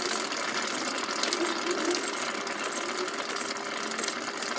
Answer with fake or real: real